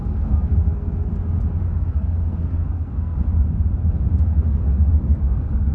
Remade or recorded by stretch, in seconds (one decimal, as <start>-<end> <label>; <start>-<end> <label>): 0.0-1.1 remade; 1.1-1.6 recorded; 1.6-3.3 remade; 3.3-4.2 recorded; 4.2-5.7 remade